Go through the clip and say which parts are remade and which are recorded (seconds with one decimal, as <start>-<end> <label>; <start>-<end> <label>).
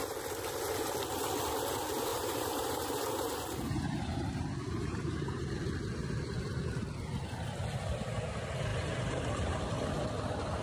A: 0.0-2.1 recorded; 2.1-5.5 remade; 5.5-8.7 recorded; 8.7-9.6 remade; 9.6-10.6 recorded